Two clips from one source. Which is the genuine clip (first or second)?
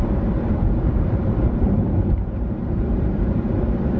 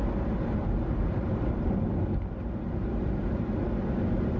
second